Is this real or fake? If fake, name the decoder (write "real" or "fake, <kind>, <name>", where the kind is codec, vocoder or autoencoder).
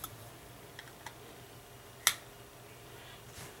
real